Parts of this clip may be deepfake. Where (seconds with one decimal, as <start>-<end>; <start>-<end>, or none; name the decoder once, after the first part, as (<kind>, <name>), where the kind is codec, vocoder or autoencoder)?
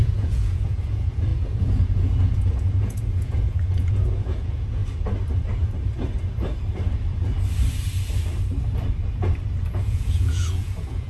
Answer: 0.0-4.8 (vocoder, Vocos); 9.6-11.1